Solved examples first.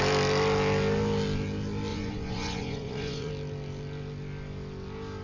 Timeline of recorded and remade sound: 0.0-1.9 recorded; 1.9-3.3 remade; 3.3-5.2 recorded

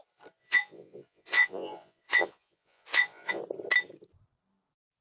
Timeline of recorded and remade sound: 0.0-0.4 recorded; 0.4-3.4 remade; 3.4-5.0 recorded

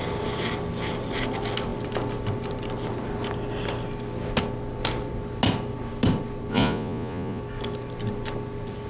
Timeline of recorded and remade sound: 0.0-6.5 recorded; 6.5-7.4 remade; 7.4-8.9 recorded

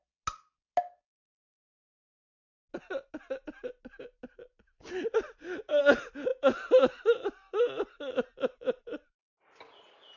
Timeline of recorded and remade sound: 0.0-10.2 recorded

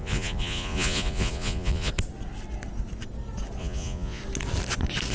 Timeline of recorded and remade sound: 0.0-1.9 remade; 1.9-3.6 recorded; 3.6-4.2 remade; 4.2-5.1 recorded

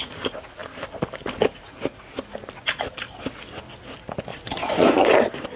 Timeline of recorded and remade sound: 0.0-4.3 recorded; 4.3-5.1 remade; 5.1-5.6 recorded

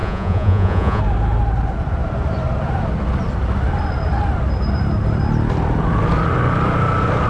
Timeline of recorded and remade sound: 0.0-1.0 remade; 1.0-7.3 recorded